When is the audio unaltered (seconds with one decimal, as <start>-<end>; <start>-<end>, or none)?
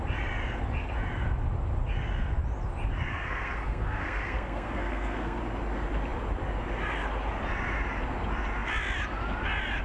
0.0-3.1; 5.4-9.8